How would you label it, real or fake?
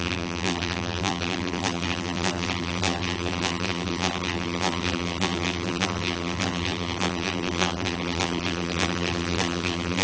fake